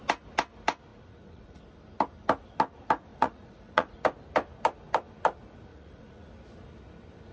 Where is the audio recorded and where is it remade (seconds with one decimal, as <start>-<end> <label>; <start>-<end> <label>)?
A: 0.0-0.9 recorded; 0.9-1.6 remade; 1.6-3.1 recorded; 3.1-4.0 remade; 4.0-5.7 recorded; 5.7-6.3 remade; 6.3-7.3 recorded